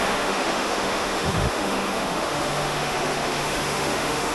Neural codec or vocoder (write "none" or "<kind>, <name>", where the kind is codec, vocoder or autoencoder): autoencoder, DAC-VAE